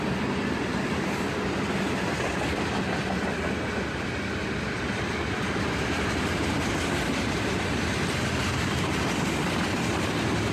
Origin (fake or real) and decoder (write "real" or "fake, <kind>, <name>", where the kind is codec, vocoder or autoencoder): real